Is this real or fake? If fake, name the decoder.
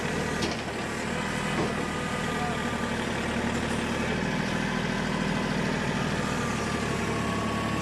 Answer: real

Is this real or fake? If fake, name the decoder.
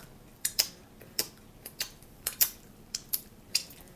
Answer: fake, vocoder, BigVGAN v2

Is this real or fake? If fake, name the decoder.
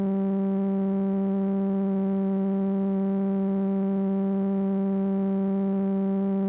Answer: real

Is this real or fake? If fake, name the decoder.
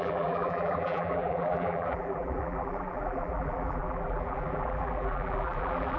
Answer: fake, vocoder, BigVGAN v2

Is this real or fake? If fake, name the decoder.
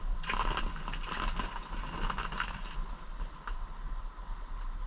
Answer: real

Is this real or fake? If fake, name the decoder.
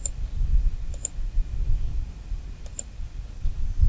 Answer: real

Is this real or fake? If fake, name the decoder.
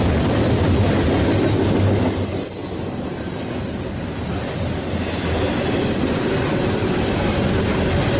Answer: real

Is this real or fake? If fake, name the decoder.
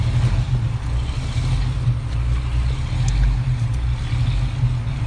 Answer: real